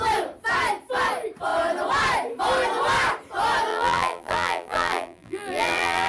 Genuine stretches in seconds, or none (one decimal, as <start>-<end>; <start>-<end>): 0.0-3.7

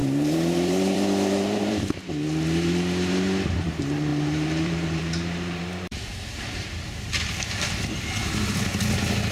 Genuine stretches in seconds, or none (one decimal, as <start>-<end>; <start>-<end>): 1.8-4.1; 7.1-9.3

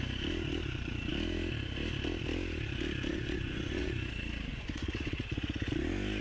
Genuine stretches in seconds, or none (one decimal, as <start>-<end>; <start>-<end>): 0.0-3.1; 4.1-4.5; 5.7-6.2